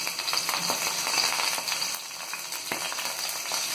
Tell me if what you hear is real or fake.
real